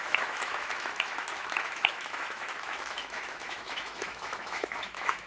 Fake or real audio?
fake